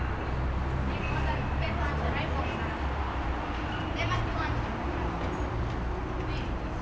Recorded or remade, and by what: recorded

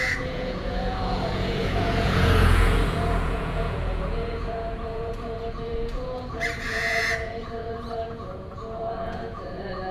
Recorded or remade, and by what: remade, vocoder, Vocos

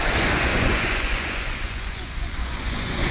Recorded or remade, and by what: remade, vocoder, Vocos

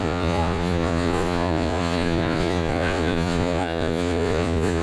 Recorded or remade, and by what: remade, vocoder, Vocos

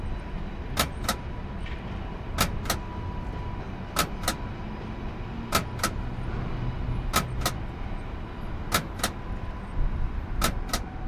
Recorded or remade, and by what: recorded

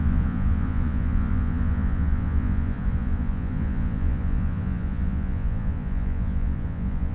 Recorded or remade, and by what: remade, vocoder, Vocos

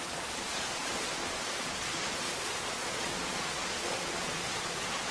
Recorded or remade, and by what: remade, vocoder, Vocos